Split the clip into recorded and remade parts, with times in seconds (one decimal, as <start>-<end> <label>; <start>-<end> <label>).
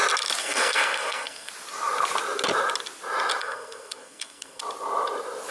0.0-0.4 recorded; 0.4-1.5 remade; 1.5-3.4 recorded; 3.4-4.6 remade; 4.6-5.5 recorded